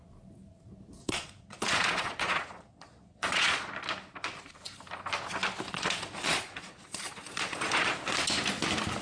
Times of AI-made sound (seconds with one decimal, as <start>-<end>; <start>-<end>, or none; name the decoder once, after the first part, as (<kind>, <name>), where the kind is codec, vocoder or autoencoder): 1.0-3.7 (vocoder, Vocos); 5.7-7.9